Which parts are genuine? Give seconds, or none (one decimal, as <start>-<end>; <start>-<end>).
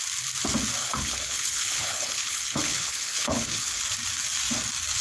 0.0-0.8; 3.8-5.0